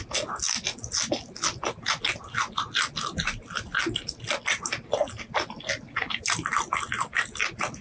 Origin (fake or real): real